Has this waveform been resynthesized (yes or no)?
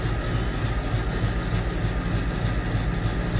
no